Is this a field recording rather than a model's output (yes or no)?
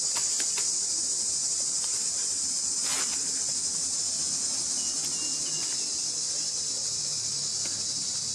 yes